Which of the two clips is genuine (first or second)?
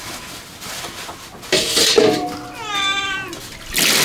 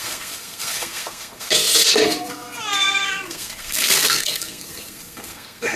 first